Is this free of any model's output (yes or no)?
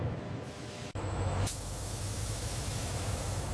no